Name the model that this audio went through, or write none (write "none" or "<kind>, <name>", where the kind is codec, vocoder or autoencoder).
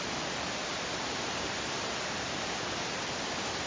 none